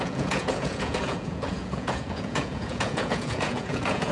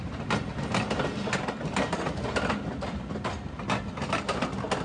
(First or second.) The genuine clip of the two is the second